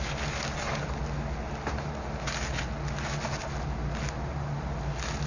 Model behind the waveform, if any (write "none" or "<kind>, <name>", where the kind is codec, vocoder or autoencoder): none